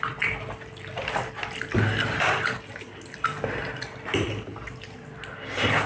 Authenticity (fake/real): real